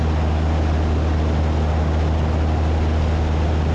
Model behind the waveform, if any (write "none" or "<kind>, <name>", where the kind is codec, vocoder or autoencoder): none